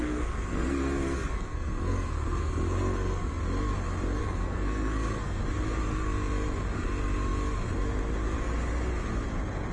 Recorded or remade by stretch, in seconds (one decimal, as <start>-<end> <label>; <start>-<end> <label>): 0.0-3.4 remade; 3.4-4.2 recorded; 4.2-5.4 remade; 5.4-9.7 recorded